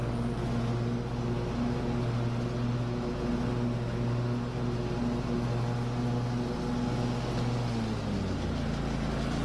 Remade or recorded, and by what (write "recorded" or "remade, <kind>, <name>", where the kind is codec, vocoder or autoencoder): recorded